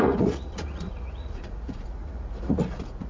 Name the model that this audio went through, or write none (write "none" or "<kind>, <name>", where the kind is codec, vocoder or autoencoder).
vocoder, Vocos